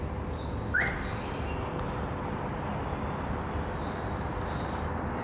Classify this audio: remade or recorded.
recorded